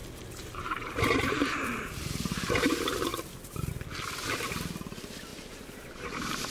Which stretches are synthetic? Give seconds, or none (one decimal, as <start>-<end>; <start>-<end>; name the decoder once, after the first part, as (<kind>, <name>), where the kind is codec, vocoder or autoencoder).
0.0-2.7 (vocoder, BigVGAN v2); 5.3-6.5